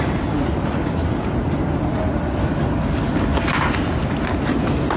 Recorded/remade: recorded